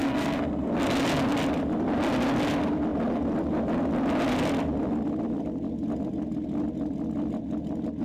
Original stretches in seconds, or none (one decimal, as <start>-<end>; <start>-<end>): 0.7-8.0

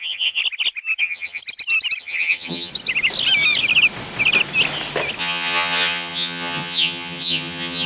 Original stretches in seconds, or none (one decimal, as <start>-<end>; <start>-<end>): 0.4-1.0; 1.4-2.0; 2.7-5.2

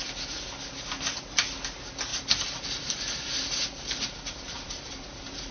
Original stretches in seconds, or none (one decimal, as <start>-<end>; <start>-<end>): 0.0-2.1

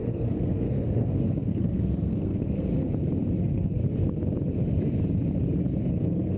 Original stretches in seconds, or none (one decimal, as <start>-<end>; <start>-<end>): 2.7-3.4; 3.8-5.9

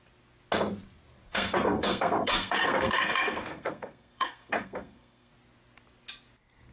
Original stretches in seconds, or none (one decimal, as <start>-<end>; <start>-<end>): 0.0-1.3; 5.3-6.7